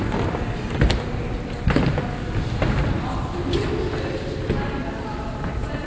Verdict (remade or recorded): recorded